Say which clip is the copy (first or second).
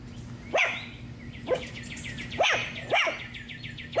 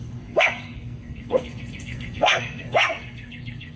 second